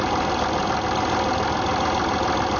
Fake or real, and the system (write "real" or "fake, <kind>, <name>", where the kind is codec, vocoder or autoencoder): real